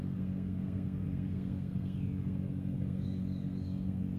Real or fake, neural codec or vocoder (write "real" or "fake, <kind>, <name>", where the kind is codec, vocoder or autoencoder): fake, codec, SNAC